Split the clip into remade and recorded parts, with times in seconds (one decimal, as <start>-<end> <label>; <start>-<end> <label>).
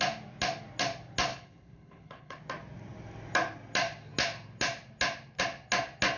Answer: 0.0-1.3 recorded; 1.3-2.4 remade; 2.4-6.2 recorded